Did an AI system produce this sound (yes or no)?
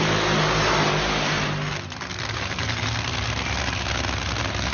no